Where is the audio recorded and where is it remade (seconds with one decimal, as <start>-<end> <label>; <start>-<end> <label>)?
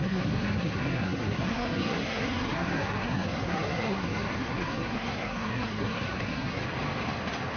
0.0-6.6 remade; 6.6-7.6 recorded